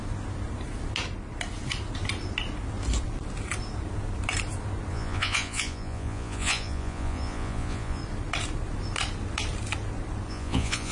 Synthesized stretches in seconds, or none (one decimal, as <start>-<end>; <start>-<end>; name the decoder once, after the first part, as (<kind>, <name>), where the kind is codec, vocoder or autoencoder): 4.9-8.0 (vocoder, Vocos); 10.3-10.9